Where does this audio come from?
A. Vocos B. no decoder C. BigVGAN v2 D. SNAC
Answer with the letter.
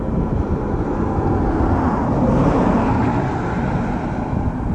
B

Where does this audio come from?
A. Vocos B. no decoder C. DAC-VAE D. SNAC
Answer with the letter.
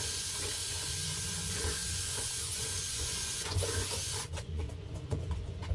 A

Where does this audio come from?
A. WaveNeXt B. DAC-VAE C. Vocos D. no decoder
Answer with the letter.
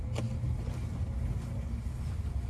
D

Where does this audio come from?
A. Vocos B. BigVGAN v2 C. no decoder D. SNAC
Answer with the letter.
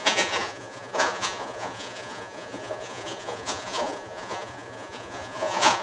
A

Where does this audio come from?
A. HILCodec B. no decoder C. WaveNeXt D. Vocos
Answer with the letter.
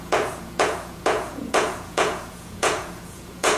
D